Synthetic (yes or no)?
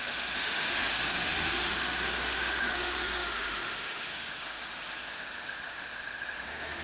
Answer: yes